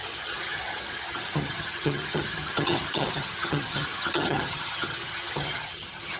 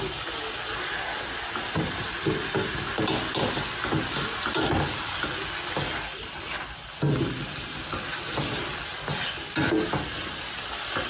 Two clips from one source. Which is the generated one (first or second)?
first